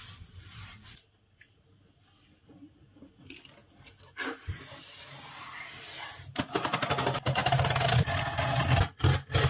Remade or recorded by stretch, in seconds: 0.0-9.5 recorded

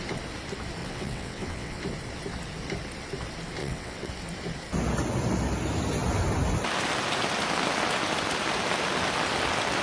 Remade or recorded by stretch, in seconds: 0.0-0.8 recorded; 0.8-1.8 remade; 1.8-3.6 recorded; 3.6-4.1 remade; 4.1-9.8 recorded

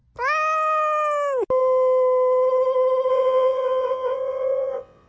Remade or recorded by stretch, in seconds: 0.0-3.1 recorded; 3.1-5.1 remade